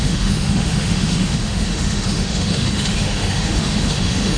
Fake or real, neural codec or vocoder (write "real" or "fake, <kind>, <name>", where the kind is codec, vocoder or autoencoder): fake, autoencoder, DAC-VAE